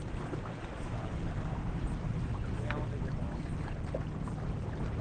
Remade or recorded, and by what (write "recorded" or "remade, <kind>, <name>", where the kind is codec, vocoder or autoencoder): recorded